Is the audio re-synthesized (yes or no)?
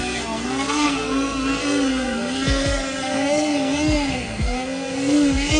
yes